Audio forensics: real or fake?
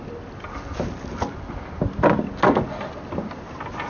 real